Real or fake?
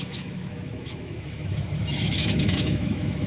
fake